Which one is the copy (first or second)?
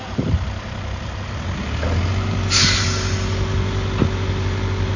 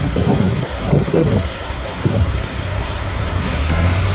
second